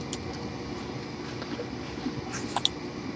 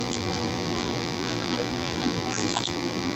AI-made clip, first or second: second